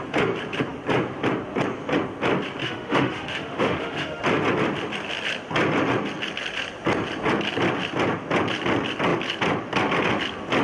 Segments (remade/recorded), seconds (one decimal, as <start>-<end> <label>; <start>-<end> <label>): 0.0-2.6 recorded; 2.6-4.2 remade; 4.2-10.6 recorded